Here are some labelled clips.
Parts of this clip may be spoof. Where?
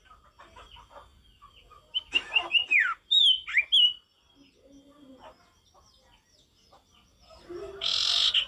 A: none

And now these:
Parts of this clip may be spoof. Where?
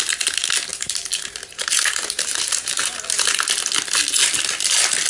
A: 0.7-2.8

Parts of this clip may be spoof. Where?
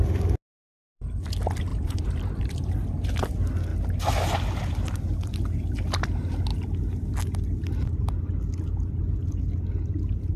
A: 1.7-3.3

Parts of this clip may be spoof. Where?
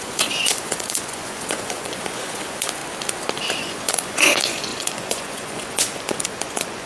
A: 0.0-2.8; 3.6-6.9